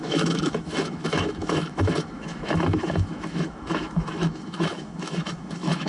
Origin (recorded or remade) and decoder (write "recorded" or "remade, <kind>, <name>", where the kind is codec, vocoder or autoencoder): remade, autoencoder, DAC-VAE